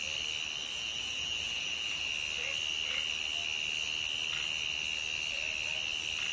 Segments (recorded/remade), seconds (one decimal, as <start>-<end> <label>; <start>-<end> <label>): 0.0-0.7 recorded; 0.7-2.1 remade; 2.1-6.3 recorded